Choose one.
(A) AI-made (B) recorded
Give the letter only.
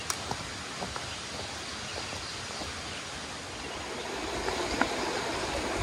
B